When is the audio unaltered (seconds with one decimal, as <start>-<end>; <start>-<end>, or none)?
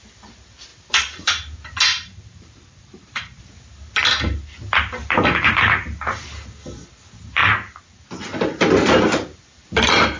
0.0-0.7; 1.3-1.9; 3.4-5.0; 6.2-10.2